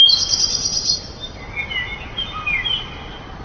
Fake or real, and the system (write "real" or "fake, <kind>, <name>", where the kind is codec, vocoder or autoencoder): real